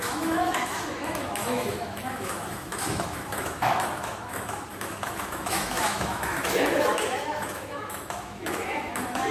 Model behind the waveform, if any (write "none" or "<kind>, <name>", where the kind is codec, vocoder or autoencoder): autoencoder, DAC-VAE